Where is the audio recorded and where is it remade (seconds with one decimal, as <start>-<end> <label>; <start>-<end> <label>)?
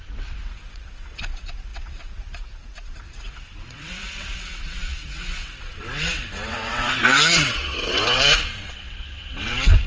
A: 0.0-9.9 remade